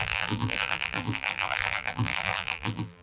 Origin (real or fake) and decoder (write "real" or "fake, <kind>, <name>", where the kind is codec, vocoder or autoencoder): fake, vocoder, BigVGAN v2